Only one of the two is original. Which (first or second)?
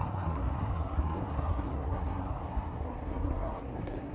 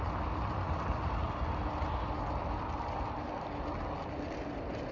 second